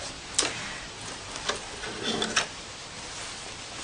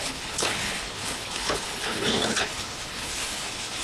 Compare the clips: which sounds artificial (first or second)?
second